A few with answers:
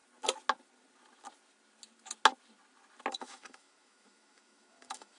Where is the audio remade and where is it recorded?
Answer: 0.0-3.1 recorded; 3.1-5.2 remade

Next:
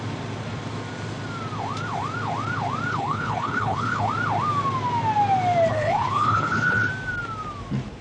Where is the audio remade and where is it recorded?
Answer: 0.0-2.9 recorded; 2.9-4.1 remade; 4.1-5.7 recorded; 5.7-6.9 remade; 6.9-8.0 recorded

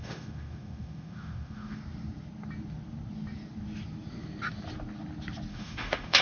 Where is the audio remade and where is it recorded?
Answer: 0.0-1.8 remade; 1.8-5.5 recorded; 5.5-6.2 remade

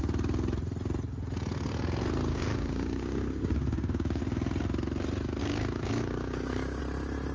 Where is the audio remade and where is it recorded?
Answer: 0.0-2.3 recorded; 2.3-4.2 remade; 4.2-5.4 recorded; 5.4-6.8 remade; 6.8-7.3 recorded